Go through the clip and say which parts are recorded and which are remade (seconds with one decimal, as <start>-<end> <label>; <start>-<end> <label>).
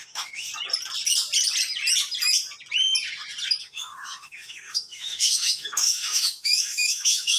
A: 0.0-0.5 remade; 0.5-3.6 recorded; 3.6-7.4 remade